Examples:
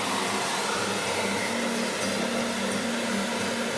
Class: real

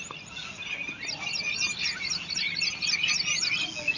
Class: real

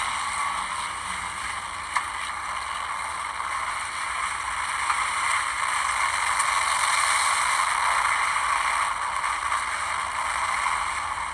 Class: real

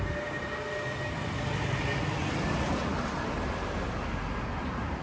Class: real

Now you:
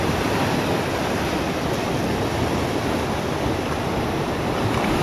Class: real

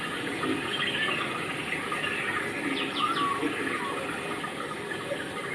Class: real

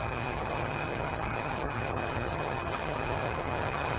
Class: fake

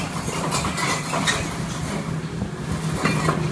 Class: real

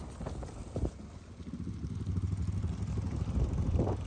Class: real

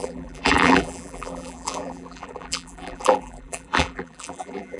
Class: fake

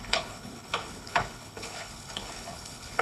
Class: fake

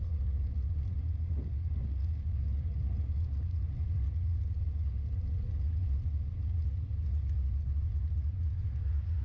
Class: real